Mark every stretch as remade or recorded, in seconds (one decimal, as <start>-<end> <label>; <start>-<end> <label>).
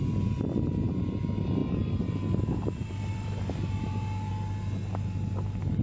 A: 0.0-1.6 recorded; 1.6-4.3 remade; 4.3-5.8 recorded